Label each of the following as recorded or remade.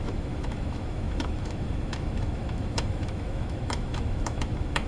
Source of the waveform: remade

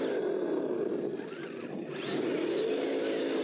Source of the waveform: recorded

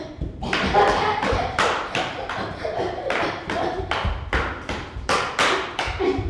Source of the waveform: remade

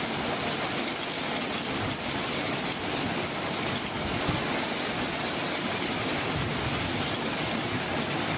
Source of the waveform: recorded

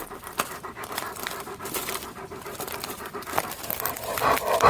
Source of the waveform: recorded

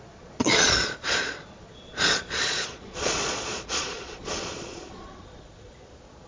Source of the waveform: remade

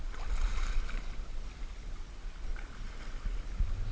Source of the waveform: recorded